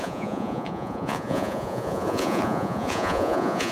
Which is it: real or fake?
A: fake